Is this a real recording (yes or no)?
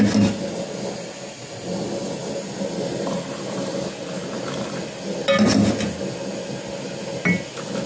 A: yes